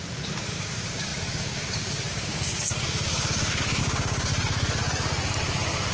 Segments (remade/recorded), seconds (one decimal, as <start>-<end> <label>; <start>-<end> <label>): 0.0-4.3 remade; 4.3-5.9 recorded